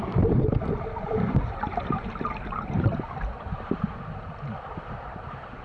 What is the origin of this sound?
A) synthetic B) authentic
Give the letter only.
A